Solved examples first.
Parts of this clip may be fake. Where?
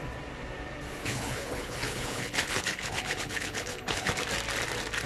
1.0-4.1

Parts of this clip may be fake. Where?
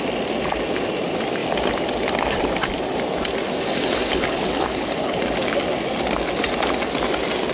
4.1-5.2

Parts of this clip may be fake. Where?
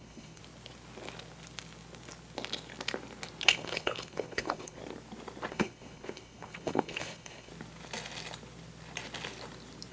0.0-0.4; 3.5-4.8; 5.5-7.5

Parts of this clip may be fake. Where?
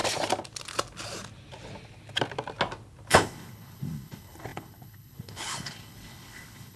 3.1-6.8